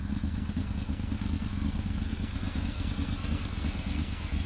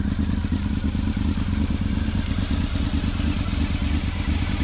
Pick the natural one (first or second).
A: second